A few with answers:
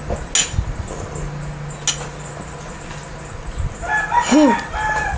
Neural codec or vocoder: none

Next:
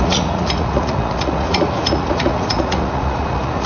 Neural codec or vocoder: vocoder, Vocos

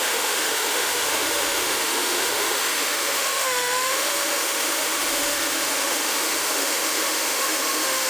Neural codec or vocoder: autoencoder, DAC-VAE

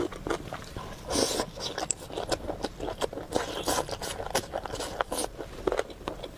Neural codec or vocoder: none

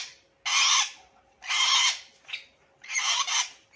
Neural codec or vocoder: none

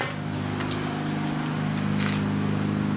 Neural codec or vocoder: none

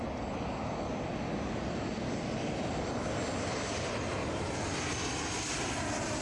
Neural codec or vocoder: none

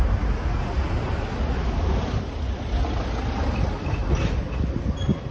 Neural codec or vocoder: none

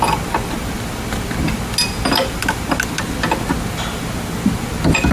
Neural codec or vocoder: none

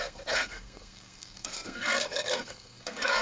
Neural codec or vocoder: codec, SNAC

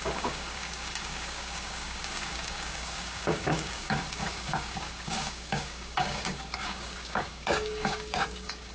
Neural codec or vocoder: codec, DAC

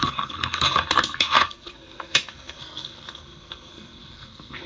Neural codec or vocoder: codec, SNAC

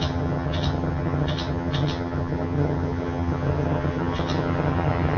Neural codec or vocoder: vocoder, HiFi-GAN